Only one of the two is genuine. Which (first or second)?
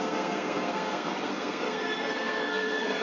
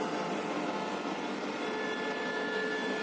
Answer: second